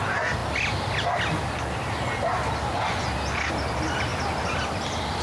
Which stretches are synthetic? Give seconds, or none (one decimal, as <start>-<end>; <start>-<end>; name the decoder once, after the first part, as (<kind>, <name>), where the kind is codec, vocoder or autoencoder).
4.1-5.2 (vocoder, BigVGAN v2)